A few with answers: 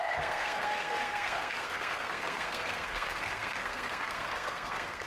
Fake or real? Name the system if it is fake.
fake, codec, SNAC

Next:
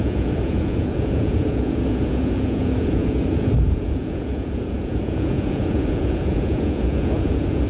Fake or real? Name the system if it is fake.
fake, vocoder, Vocos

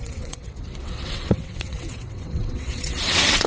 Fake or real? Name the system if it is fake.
fake, vocoder, WaveNeXt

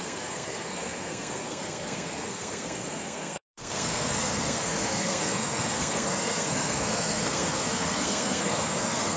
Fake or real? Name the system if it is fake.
fake, codec, SNAC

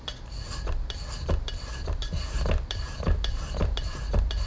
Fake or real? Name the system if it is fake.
fake, vocoder, BigVGAN v2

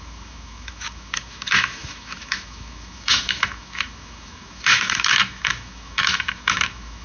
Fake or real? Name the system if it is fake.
fake, autoencoder, DAC-VAE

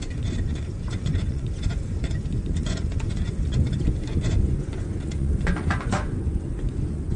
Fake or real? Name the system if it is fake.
fake, vocoder, Vocos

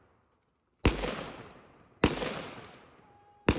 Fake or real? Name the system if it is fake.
real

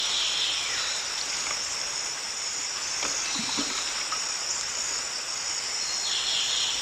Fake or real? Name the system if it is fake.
real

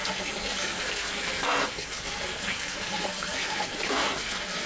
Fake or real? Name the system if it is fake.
fake, codec, SNAC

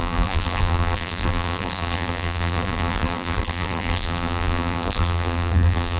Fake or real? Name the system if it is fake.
fake, vocoder, BigVGAN v2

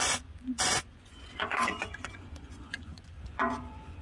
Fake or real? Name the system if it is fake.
fake, vocoder, Vocos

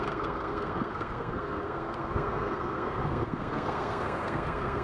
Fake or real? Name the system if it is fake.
fake, codec, SNAC